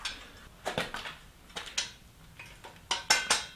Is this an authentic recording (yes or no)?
yes